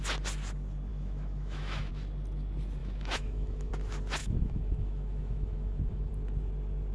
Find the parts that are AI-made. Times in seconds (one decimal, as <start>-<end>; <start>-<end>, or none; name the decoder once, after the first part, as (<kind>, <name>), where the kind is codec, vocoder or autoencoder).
0.9-1.9 (autoencoder, DAC-VAE); 2.8-3.7; 4.2-6.1